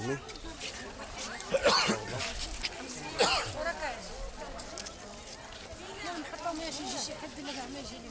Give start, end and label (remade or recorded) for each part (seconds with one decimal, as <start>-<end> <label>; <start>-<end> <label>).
0.0-8.1 recorded